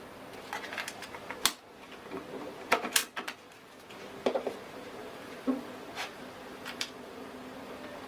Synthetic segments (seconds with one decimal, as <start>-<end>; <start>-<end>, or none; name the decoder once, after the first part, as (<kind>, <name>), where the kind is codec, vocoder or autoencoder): 5.0-5.7 (vocoder, BigVGAN v2); 6.6-7.4